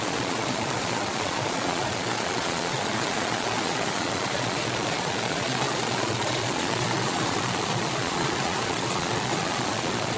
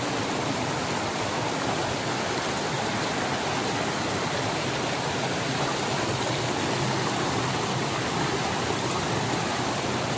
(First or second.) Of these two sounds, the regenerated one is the first